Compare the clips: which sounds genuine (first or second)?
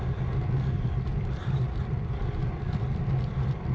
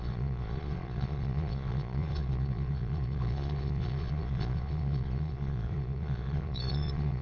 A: first